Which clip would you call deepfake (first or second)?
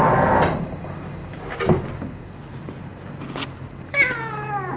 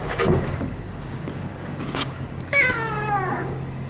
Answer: second